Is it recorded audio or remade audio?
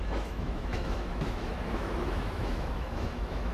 remade